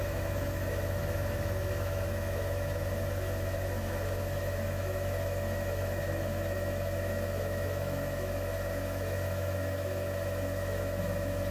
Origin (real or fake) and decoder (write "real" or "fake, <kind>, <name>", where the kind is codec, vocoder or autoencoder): fake, autoencoder, DAC-VAE